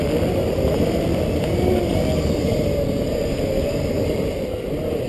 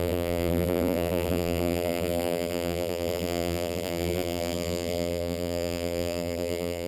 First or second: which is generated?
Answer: second